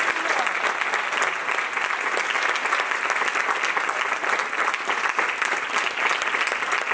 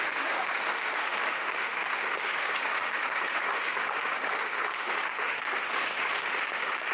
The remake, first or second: second